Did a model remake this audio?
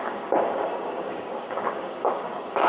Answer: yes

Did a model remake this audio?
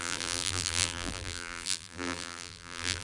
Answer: yes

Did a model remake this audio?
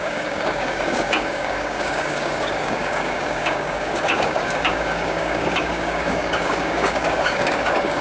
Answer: yes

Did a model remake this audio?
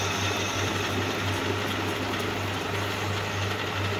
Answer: no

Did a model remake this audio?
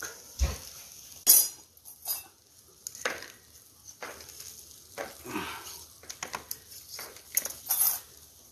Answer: no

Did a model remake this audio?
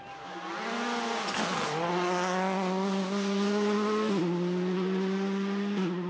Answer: no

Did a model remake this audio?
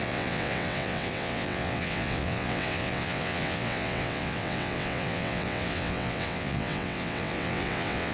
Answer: yes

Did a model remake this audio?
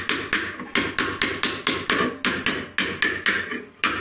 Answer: no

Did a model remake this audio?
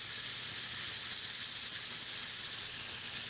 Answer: no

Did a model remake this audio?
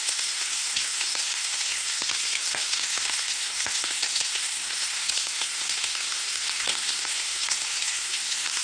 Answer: yes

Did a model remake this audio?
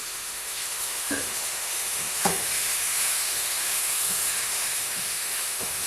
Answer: yes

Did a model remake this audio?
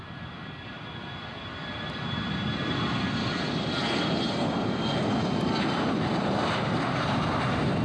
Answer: no